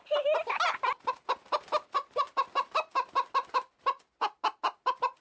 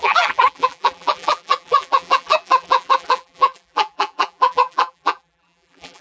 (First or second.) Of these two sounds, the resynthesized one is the second